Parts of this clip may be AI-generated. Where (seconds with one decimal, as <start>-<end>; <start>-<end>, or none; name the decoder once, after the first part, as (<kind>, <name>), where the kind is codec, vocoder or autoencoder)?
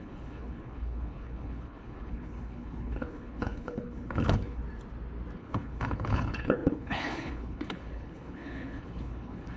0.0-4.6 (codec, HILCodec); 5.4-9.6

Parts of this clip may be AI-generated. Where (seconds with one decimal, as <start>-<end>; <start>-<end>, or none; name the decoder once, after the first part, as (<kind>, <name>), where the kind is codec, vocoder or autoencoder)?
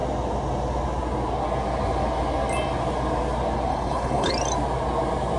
3.7-4.3 (codec, HILCodec)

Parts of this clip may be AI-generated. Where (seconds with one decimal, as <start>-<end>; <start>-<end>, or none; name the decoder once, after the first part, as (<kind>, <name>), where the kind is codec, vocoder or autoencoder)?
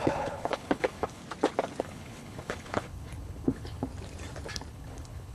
0.0-1.2 (codec, HILCodec); 1.8-3.9; 4.7-5.3